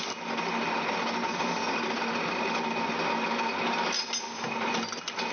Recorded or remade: recorded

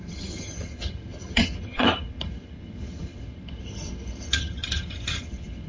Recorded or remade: remade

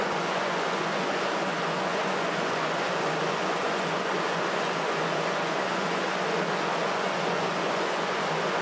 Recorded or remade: remade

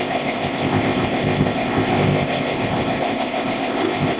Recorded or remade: remade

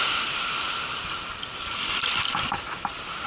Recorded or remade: recorded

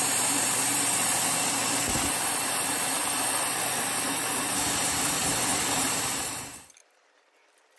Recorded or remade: remade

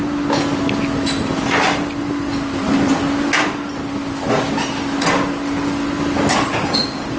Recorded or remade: recorded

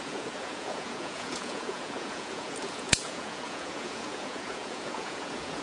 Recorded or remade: remade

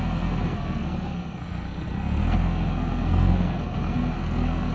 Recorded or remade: remade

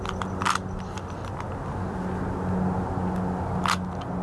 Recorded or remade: recorded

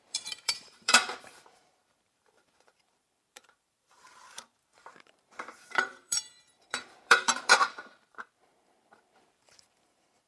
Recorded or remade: remade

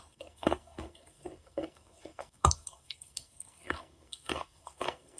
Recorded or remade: remade